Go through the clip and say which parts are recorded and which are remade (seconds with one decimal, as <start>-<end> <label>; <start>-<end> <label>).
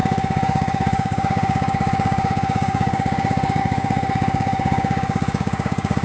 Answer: 0.0-6.0 remade